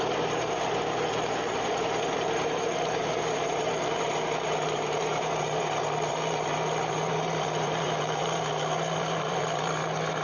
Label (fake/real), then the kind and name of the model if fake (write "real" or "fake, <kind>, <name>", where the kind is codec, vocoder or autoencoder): fake, vocoder, BigVGAN v2